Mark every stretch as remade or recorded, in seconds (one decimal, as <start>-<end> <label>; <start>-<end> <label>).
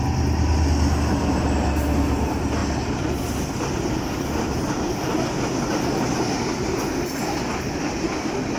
0.0-2.6 recorded; 2.6-3.6 remade; 3.6-8.6 recorded